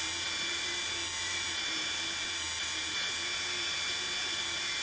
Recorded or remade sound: recorded